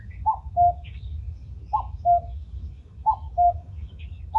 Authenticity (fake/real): fake